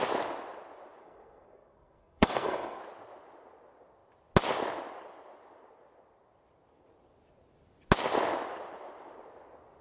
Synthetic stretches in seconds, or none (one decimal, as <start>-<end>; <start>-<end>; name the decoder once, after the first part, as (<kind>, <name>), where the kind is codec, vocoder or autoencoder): 1.0-2.8 (codec, SNAC)